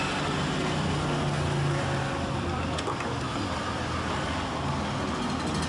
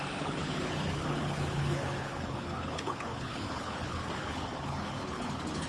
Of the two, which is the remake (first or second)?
second